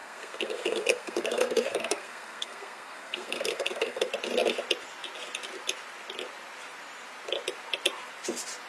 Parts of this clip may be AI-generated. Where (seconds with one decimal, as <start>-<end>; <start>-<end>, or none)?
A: 0.0-4.1